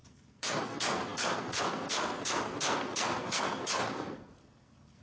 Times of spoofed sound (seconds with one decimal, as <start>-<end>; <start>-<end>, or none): 0.0-5.0

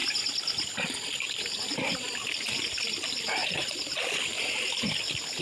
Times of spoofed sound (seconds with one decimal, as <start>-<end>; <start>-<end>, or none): none

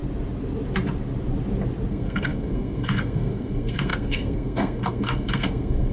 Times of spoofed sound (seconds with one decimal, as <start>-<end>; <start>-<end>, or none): 1.9-5.9

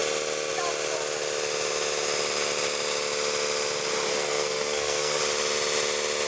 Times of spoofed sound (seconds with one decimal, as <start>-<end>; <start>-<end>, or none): 4.1-5.2